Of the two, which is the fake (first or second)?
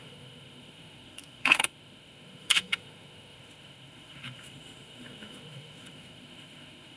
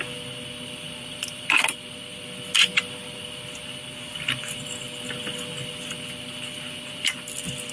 first